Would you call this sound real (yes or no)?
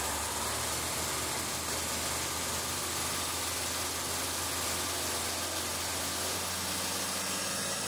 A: yes